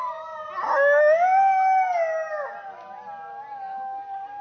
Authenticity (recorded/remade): recorded